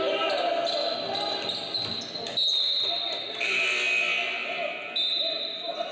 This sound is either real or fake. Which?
real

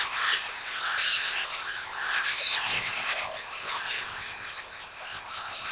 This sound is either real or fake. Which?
fake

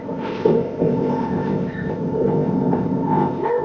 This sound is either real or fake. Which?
fake